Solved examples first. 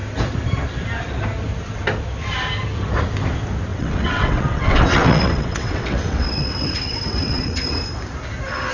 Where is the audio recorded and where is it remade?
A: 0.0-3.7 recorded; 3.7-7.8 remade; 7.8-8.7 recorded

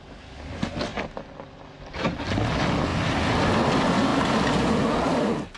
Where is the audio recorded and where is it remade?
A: 0.0-2.9 recorded; 2.9-3.5 remade; 3.5-5.6 recorded

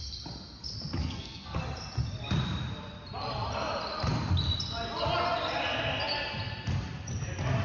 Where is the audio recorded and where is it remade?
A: 0.0-1.0 recorded; 1.0-1.6 remade; 1.6-7.6 recorded

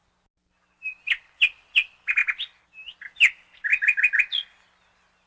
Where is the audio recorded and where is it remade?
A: 0.0-5.3 recorded

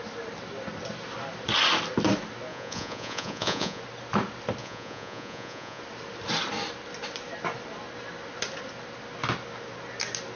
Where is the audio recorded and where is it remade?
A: 0.0-2.5 recorded; 2.5-3.8 remade; 3.8-4.6 recorded; 4.6-5.8 remade; 5.8-10.3 recorded